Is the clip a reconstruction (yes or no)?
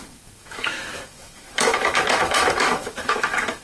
yes